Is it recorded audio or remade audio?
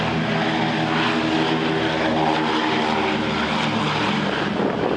recorded